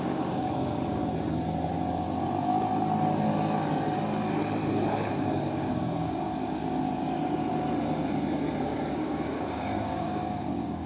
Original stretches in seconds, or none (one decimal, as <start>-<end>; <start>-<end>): 1.0-5.1; 6.6-8.6